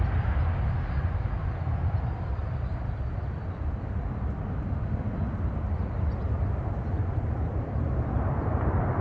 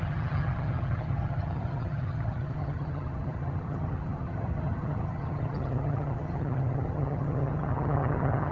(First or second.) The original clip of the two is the first